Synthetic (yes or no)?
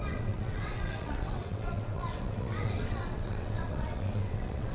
yes